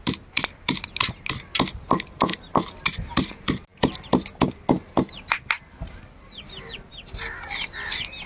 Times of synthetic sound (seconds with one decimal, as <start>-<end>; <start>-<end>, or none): none